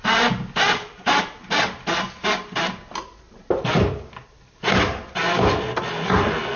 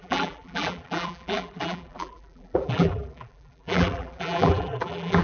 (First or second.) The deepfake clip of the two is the second